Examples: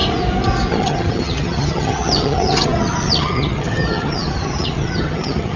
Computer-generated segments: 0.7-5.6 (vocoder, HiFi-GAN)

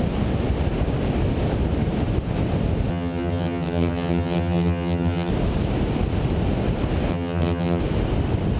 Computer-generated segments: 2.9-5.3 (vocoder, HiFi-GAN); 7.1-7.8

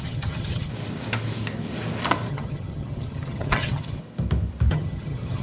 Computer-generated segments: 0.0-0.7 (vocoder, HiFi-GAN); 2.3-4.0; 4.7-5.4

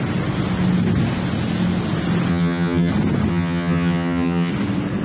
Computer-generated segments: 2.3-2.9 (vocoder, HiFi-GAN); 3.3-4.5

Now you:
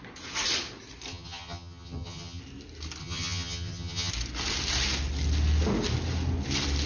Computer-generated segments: 1.1-2.4 (vocoder, HiFi-GAN); 3.0-4.1

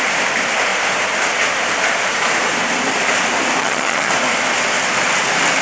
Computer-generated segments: 3.6-4.1 (vocoder, HiFi-GAN)